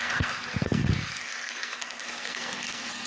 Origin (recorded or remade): remade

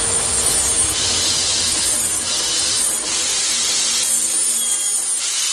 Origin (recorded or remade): recorded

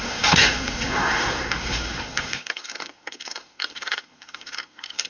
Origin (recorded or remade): remade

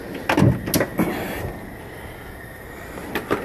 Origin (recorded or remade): recorded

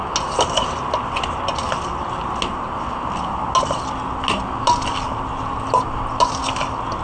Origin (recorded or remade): recorded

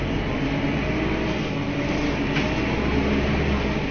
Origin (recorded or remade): recorded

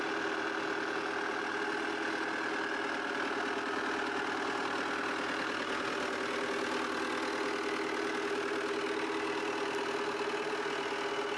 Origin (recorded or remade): recorded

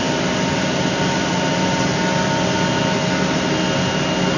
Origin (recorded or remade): recorded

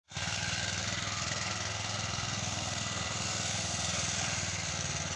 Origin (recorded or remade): remade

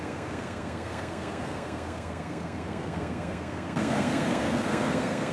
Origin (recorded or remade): remade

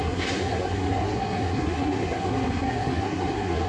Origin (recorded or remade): remade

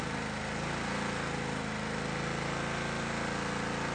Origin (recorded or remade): recorded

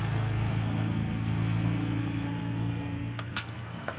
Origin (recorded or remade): remade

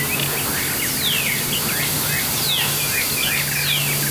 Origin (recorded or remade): recorded